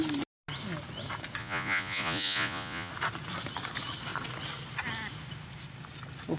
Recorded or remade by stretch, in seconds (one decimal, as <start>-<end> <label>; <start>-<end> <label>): 0.0-1.4 recorded; 1.4-2.9 remade; 2.9-6.4 recorded